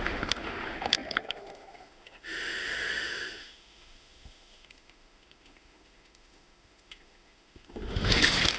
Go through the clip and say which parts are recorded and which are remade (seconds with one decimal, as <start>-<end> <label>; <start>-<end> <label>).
0.0-8.6 remade